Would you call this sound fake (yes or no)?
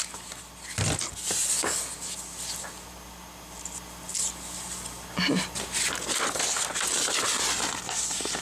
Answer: no